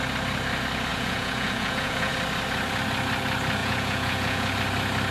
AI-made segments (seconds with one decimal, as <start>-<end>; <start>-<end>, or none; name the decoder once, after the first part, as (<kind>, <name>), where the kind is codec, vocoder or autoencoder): 0.9-2.1 (vocoder, Vocos); 3.6-4.5

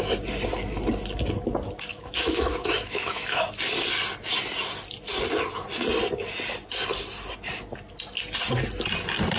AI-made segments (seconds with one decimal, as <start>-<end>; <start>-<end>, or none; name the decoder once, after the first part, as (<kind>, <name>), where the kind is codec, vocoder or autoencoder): 1.9-3.4 (autoencoder, DAC-VAE)

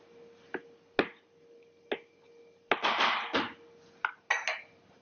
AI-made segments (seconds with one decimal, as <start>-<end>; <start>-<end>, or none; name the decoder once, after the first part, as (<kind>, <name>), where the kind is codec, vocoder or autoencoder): none

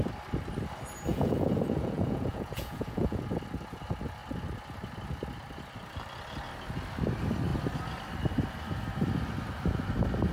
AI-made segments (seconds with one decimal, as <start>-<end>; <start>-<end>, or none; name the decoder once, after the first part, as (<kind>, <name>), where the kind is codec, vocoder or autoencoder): 1.1-3.2 (vocoder, Vocos)

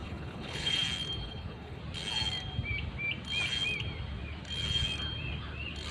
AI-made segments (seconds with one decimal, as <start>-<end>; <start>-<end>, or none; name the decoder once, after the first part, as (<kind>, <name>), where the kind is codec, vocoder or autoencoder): 0.0-0.7 (codec, HILCodec); 1.2-1.8

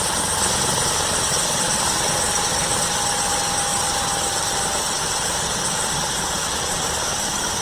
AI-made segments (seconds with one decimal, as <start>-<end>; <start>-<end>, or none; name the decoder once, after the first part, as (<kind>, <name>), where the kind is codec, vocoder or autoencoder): none